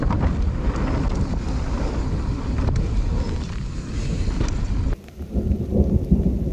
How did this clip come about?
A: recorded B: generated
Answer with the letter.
A